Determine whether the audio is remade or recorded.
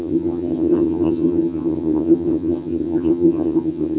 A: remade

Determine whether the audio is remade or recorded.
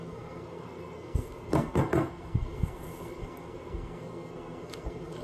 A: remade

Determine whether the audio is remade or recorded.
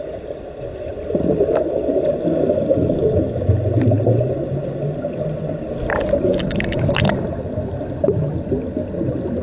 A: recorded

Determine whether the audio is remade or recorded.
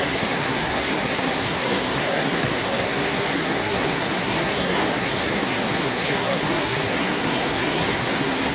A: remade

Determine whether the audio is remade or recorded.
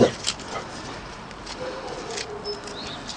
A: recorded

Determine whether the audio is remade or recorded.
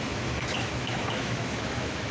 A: remade